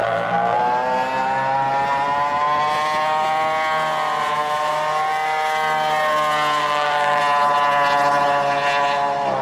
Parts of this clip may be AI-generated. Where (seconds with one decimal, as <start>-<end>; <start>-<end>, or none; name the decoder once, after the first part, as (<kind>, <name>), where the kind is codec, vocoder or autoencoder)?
0.0-0.6 (vocoder, BigVGAN v2); 6.6-7.2